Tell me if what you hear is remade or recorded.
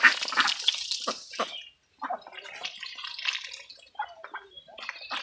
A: recorded